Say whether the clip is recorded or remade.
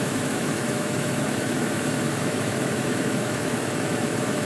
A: remade